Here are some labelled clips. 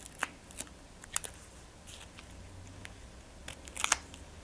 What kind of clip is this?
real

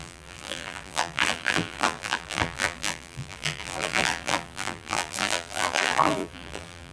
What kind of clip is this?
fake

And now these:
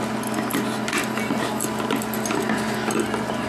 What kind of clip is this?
real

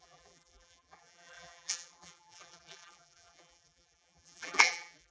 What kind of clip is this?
fake